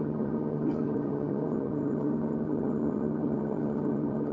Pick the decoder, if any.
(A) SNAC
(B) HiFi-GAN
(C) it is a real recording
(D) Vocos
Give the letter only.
B